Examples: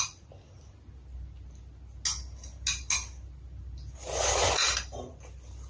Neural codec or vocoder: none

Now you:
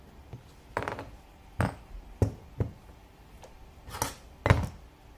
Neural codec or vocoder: none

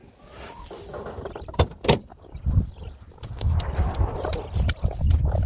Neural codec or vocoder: vocoder, BigVGAN v2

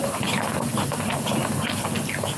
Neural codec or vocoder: none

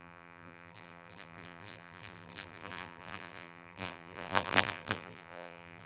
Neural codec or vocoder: vocoder, BigVGAN v2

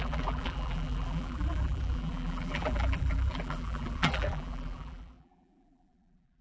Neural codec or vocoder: vocoder, BigVGAN v2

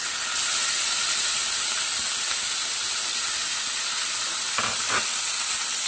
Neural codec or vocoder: none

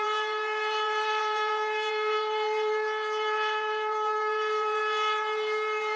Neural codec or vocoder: vocoder, BigVGAN v2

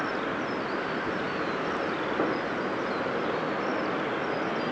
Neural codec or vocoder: none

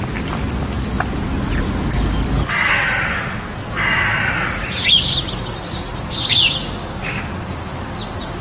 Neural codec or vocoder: none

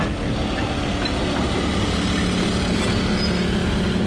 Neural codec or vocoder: none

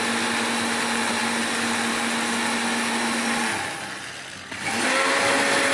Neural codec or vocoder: none